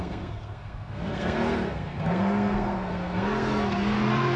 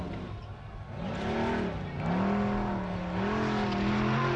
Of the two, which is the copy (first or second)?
first